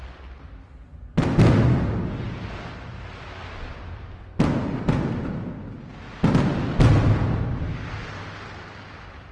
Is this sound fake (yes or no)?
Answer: no